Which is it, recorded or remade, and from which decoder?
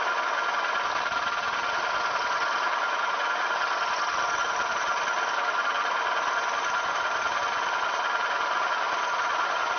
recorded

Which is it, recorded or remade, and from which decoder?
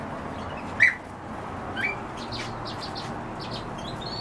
recorded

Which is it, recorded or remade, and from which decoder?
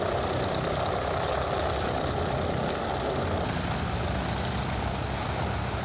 recorded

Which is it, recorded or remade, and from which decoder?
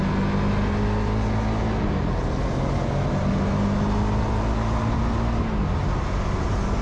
recorded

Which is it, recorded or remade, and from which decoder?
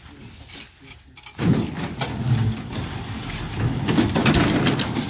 recorded